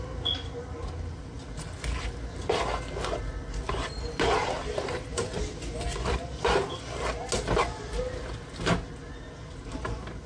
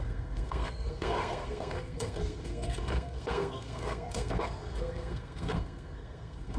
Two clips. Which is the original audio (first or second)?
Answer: first